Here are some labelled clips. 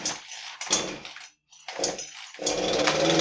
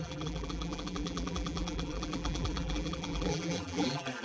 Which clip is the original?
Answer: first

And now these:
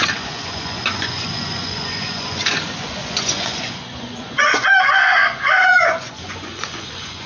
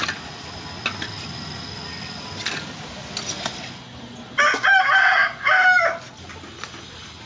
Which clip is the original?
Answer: second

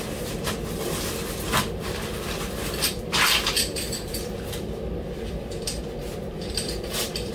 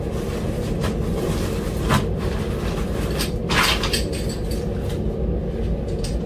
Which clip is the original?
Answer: second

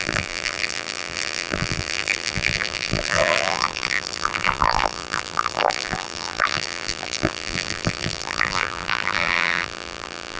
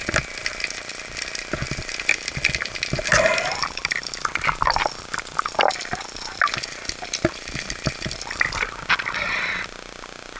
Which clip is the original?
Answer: second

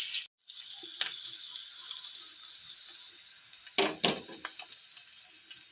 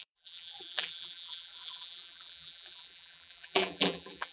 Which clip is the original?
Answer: first